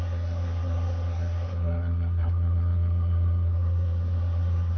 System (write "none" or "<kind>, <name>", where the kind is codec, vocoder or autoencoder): codec, SNAC